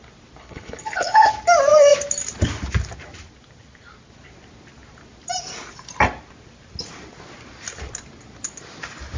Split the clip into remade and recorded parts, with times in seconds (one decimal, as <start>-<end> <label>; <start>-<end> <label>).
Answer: 0.0-0.4 recorded; 0.4-1.3 remade; 1.3-9.2 recorded